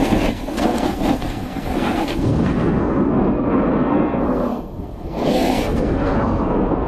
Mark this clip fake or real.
fake